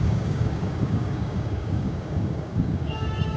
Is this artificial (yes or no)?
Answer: yes